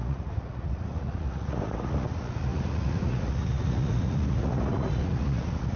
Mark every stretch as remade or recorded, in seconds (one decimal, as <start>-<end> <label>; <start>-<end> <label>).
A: 0.0-5.8 remade

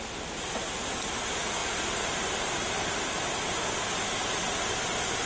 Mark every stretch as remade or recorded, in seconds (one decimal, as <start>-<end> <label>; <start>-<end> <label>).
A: 0.0-5.2 recorded

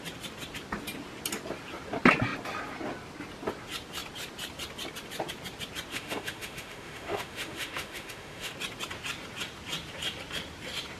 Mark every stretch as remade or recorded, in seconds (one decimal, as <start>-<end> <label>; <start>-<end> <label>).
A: 0.0-5.9 recorded; 5.9-8.5 remade; 8.5-11.0 recorded

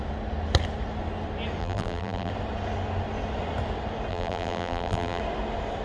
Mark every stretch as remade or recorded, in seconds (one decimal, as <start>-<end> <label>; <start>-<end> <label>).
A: 0.0-1.6 recorded; 1.6-2.3 remade; 2.3-4.1 recorded; 4.1-5.2 remade; 5.2-5.8 recorded

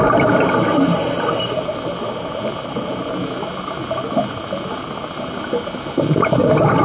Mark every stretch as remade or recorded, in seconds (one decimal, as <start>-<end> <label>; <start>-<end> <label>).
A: 0.0-6.8 recorded

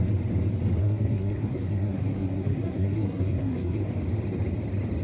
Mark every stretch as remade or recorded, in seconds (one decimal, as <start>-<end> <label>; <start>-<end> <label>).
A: 0.0-0.8 recorded; 0.8-3.8 remade; 3.8-5.0 recorded

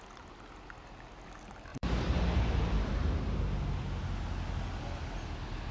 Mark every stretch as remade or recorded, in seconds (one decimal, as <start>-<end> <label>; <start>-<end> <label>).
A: 0.0-1.7 recorded; 1.7-3.1 remade; 3.1-5.7 recorded